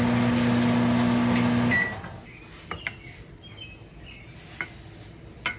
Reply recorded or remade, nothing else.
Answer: recorded